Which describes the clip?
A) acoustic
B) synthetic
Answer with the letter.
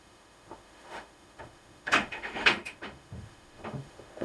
B